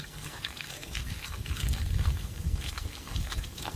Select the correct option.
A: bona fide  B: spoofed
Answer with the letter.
B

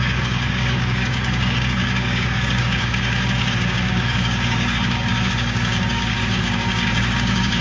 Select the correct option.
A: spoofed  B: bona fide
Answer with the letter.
A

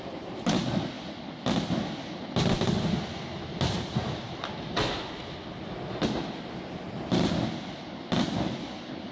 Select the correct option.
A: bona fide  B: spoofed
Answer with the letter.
A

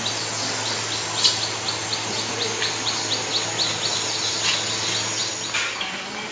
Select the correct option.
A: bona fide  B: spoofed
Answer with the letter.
A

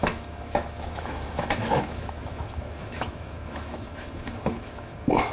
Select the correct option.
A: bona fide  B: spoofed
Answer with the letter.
B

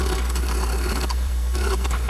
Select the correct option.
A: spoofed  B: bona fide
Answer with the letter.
A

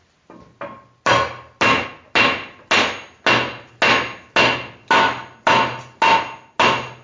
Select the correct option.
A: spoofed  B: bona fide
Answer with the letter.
B